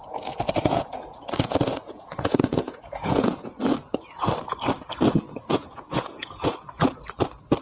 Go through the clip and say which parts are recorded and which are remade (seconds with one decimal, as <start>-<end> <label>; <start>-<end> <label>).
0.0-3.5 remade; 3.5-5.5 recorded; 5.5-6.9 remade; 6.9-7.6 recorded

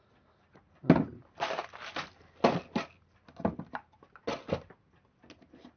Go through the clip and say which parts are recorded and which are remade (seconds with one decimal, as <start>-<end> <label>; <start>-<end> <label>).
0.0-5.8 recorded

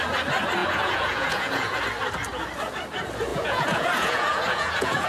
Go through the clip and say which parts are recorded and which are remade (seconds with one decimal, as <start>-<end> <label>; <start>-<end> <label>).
0.0-0.6 recorded; 0.6-1.8 remade; 1.8-3.3 recorded; 3.3-5.1 remade